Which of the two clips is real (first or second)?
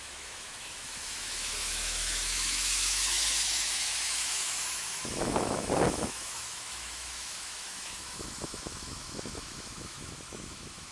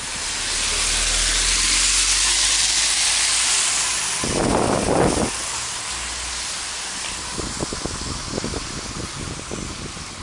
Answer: second